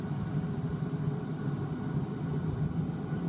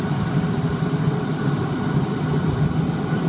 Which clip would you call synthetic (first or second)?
second